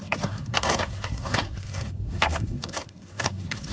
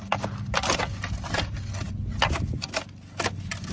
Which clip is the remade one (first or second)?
first